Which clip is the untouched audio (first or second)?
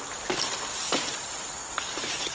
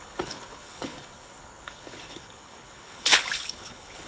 first